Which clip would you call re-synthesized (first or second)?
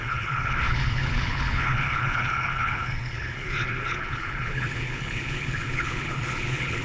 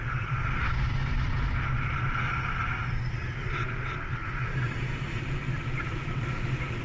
first